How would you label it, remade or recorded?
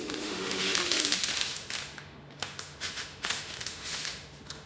remade